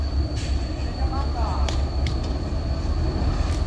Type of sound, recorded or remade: recorded